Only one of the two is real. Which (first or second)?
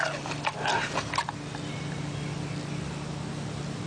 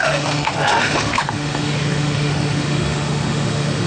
first